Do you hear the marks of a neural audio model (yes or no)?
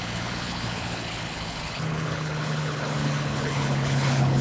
yes